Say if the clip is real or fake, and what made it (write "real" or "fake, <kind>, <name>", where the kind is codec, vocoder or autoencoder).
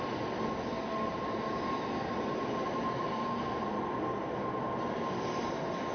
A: real